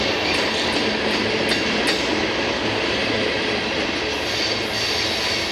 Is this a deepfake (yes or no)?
no